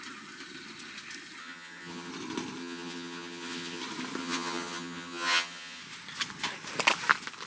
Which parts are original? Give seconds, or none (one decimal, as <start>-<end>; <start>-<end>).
0.0-1.4; 2.1-2.6; 3.8-4.2; 5.8-7.5